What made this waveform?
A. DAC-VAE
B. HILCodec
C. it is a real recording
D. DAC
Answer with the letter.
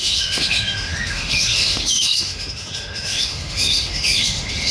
A